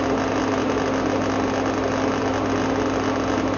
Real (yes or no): yes